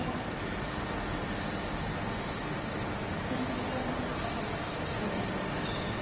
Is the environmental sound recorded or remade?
recorded